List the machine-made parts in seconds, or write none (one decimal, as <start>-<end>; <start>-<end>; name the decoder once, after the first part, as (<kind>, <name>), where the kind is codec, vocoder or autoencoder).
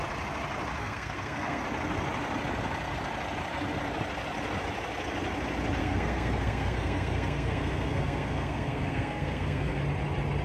0.8-1.6 (codec, SNAC); 5.8-9.8